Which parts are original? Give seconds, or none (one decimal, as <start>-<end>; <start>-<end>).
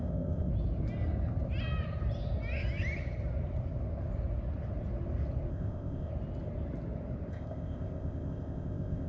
0.5-5.5; 6.1-7.3